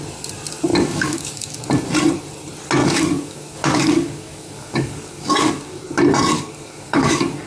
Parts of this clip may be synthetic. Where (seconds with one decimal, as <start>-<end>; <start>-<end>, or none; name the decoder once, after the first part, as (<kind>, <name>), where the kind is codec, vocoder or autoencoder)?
0.7-1.6 (codec, DAC); 2.8-5.8; 6.3-7.5